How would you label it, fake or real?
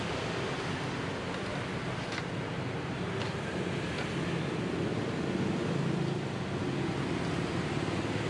real